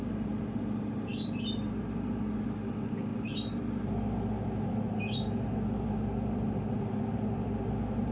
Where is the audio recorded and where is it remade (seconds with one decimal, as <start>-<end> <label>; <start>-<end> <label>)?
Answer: 0.0-8.1 recorded